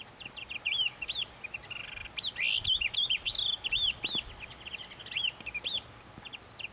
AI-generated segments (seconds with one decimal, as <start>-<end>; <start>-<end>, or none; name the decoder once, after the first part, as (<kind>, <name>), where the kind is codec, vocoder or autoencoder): none